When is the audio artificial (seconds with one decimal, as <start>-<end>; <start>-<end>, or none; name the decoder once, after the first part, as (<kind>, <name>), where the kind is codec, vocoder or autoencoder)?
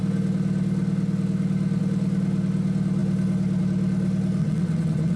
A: 4.4-5.2 (vocoder, WaveNeXt)